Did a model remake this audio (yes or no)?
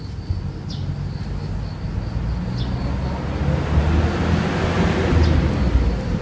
no